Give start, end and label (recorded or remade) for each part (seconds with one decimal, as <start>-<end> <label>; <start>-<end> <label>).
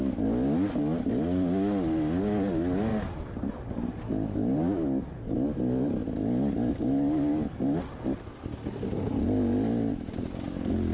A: 0.0-10.9 recorded